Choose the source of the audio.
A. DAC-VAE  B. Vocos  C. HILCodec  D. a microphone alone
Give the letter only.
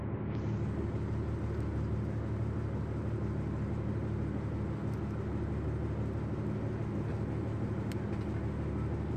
D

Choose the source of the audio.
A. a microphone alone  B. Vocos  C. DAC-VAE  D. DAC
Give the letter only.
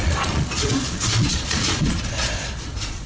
B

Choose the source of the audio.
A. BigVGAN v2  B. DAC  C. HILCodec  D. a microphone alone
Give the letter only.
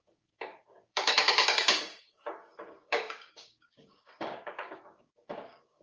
B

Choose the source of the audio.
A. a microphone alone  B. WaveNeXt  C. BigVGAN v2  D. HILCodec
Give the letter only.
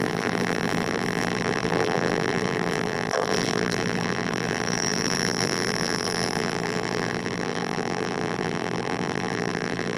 C